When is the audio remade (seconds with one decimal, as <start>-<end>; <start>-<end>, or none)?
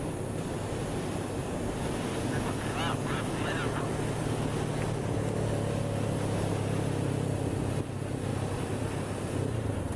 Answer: 8.3-9.5